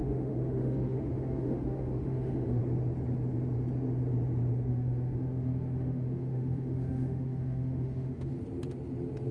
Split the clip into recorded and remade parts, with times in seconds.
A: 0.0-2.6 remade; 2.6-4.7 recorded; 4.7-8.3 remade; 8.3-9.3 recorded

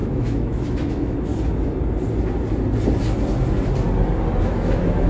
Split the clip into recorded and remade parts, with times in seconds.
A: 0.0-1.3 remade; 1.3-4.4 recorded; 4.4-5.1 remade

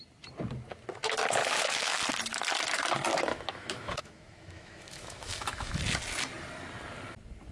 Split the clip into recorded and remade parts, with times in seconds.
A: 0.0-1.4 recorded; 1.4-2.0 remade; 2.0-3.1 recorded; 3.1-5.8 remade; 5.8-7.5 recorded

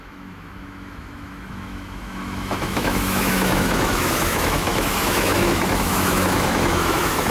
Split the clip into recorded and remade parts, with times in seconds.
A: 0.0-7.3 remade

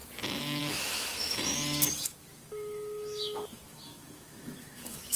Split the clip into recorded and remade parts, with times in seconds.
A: 0.0-0.6 recorded; 0.6-5.2 remade

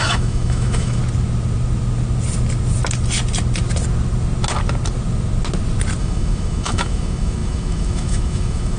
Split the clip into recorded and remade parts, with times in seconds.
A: 0.0-1.0 remade; 1.0-6.0 recorded; 6.0-8.8 remade

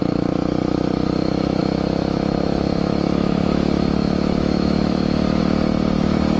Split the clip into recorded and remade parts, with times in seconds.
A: 0.0-1.6 recorded; 1.6-5.4 remade; 5.4-6.4 recorded